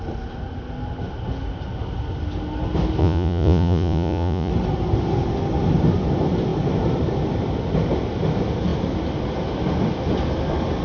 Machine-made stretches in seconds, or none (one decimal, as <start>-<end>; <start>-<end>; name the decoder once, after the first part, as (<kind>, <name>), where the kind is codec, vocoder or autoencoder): 3.0-4.5 (vocoder, Vocos)